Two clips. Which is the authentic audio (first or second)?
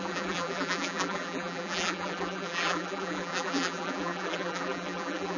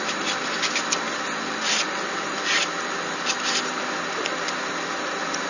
second